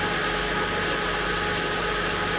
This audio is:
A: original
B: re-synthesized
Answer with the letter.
A